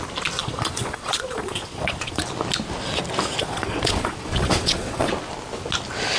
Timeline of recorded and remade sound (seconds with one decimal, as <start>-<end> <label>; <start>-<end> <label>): 0.0-0.4 recorded; 0.4-2.2 remade; 2.2-3.4 recorded; 3.4-5.1 remade; 5.1-6.2 recorded